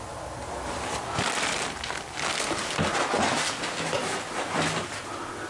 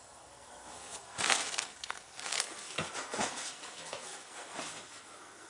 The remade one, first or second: second